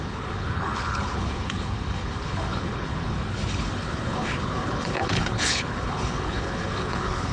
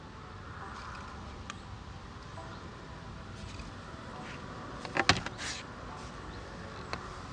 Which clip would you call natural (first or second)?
second